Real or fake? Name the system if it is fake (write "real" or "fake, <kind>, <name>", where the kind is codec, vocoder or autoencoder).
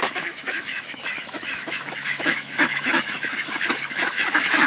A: fake, autoencoder, DAC-VAE